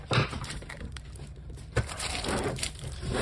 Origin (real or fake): fake